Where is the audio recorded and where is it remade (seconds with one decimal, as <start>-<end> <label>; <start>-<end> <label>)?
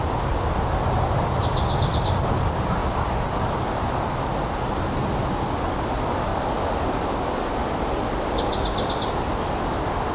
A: 0.0-10.1 recorded